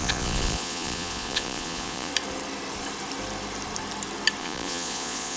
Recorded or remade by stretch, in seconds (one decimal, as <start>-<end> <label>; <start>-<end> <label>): 0.0-2.1 remade; 2.1-4.4 recorded; 4.4-5.4 remade